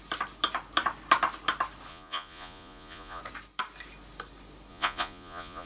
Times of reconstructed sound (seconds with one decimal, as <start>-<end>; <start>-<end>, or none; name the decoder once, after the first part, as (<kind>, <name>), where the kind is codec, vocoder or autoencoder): 1.9-3.2 (vocoder, Vocos); 4.7-5.7

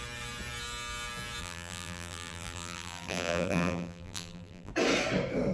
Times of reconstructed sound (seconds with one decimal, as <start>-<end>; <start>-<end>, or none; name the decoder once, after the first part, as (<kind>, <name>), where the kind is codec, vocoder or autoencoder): 1.4-4.7 (vocoder, BigVGAN v2)